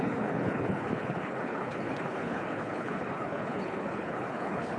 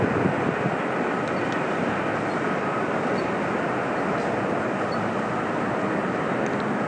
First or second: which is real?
second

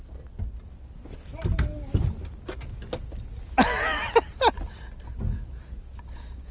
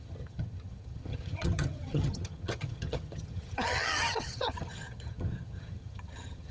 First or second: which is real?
first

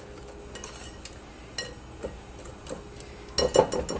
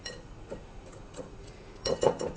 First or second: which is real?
first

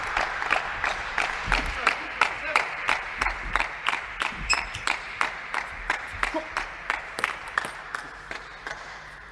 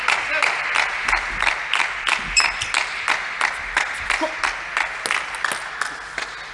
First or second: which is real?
second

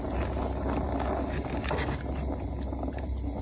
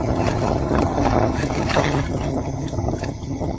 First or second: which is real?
first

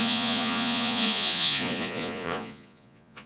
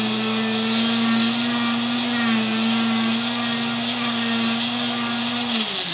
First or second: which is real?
second